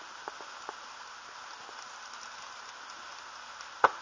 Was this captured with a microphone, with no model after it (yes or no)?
yes